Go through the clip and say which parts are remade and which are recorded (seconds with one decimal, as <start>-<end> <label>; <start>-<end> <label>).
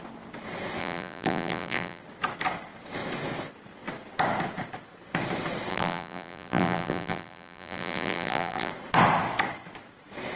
0.0-0.8 recorded; 0.8-2.0 remade; 2.0-5.7 recorded; 5.7-8.7 remade; 8.7-10.4 recorded